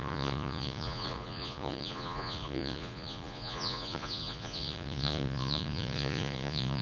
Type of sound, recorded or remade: remade